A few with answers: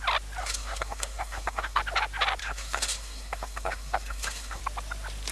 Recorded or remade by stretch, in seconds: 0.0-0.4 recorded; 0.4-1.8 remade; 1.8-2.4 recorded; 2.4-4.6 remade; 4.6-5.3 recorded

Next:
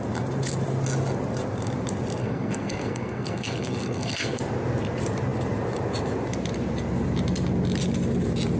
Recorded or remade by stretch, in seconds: 0.0-2.2 recorded; 2.2-4.4 remade; 4.4-8.6 recorded

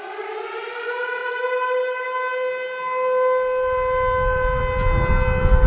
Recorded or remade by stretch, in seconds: 0.0-5.7 recorded

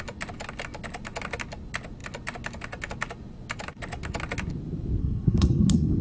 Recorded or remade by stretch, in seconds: 0.0-5.0 recorded; 5.0-6.0 remade

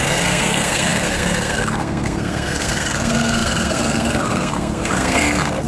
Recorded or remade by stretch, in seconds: 0.0-5.7 remade

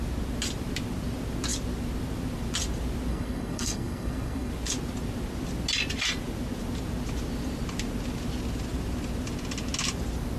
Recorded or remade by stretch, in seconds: 0.0-3.1 recorded; 3.1-4.5 remade; 4.5-10.4 recorded

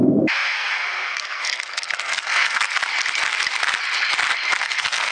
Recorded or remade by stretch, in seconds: 0.0-2.8 remade; 2.8-4.6 recorded; 4.6-5.1 remade

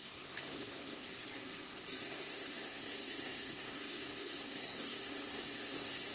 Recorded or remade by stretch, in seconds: 0.0-1.1 remade; 1.1-2.0 recorded; 2.0-6.1 remade